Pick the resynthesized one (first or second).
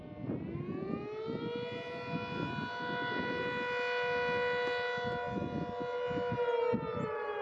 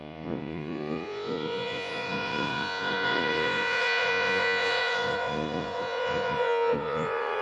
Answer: second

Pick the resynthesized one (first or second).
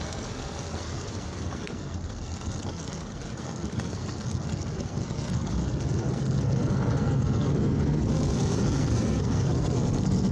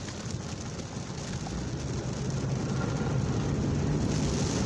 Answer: first